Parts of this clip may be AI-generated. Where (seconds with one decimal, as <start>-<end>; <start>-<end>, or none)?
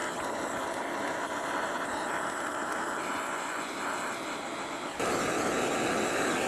3.1-3.7